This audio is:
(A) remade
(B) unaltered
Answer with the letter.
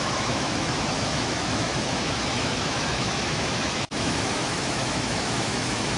A